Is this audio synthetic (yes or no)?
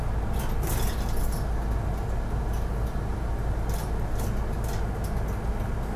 no